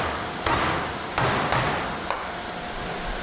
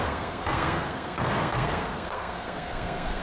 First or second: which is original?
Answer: first